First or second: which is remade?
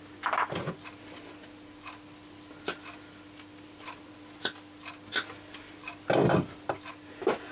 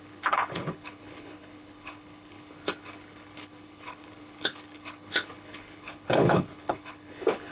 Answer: second